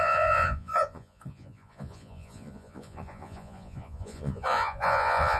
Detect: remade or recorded remade